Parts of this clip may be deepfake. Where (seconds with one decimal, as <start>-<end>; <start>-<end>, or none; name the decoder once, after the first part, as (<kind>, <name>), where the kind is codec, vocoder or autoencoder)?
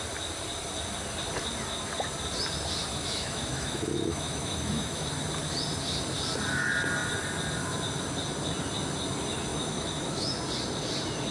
2.9-5.1 (autoencoder, DAC-VAE); 9.5-10.4